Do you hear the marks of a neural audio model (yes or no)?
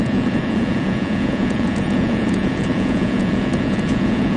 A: yes